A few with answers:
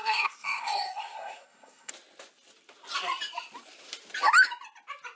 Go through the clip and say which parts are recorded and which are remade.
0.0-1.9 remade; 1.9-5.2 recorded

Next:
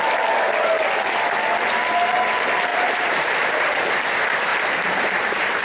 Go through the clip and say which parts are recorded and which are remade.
0.0-2.7 recorded; 2.7-3.6 remade; 3.6-4.5 recorded; 4.5-5.6 remade